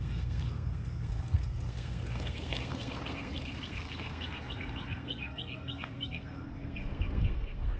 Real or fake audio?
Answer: fake